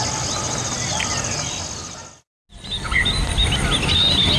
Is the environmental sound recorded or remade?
recorded